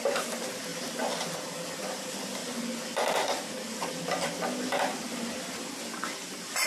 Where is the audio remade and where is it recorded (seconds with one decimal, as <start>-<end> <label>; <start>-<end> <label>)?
0.0-6.7 recorded